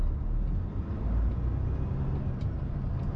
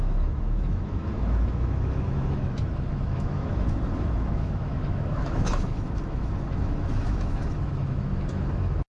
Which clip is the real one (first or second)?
first